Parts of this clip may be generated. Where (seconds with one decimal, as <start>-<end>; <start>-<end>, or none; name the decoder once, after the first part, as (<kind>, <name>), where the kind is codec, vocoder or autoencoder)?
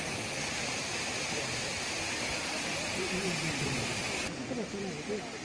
0.9-4.1 (vocoder, BigVGAN v2)